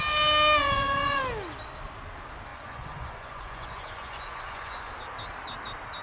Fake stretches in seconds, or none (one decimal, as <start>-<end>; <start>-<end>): 0.6-1.2; 2.5-4.9